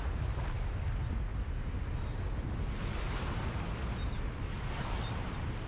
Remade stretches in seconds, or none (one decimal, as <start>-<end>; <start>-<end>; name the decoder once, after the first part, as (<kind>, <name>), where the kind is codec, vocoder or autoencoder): none